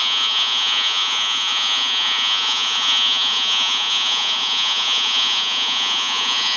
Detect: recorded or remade remade